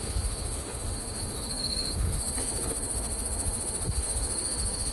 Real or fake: fake